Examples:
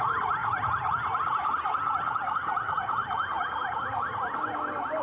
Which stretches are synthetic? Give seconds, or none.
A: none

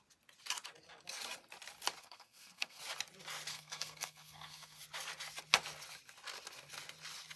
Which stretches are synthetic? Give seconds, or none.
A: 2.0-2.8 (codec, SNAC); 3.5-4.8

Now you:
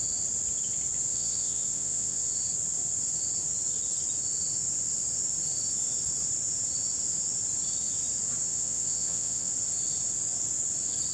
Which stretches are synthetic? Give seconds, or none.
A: 1.1-2.3 (vocoder, WaveNeXt); 8.5-9.5

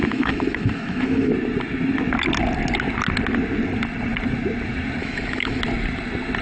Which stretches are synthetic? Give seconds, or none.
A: 0.0-1.3 (autoencoder, DAC-VAE); 5.0-5.6